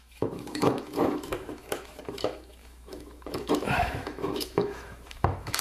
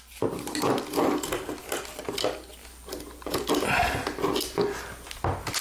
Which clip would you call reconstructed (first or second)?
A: first